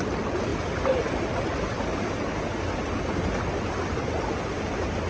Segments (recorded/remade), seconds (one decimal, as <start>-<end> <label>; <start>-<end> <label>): 0.0-5.1 recorded